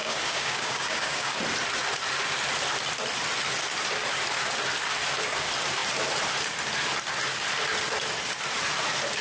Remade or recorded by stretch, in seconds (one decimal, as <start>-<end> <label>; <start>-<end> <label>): 0.0-1.4 remade; 1.4-9.2 recorded